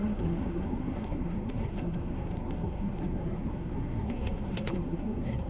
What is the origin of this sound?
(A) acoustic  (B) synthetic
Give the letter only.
B